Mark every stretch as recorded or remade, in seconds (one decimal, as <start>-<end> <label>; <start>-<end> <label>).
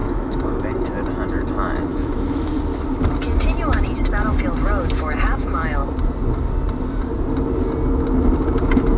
0.0-0.6 remade; 0.6-1.9 recorded; 1.9-2.6 remade; 2.6-9.0 recorded